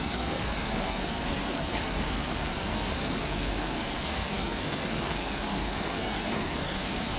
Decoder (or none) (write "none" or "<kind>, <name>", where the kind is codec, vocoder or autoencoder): codec, SNAC